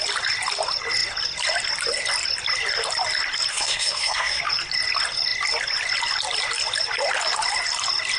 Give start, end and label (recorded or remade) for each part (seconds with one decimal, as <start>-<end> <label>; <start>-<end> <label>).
0.0-3.5 recorded; 3.5-4.4 remade; 4.4-8.2 recorded